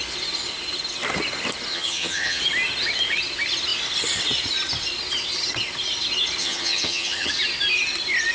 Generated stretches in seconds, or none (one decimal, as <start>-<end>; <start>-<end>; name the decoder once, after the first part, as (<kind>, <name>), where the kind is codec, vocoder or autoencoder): 1.7-2.4 (vocoder, HiFi-GAN); 6.4-7.3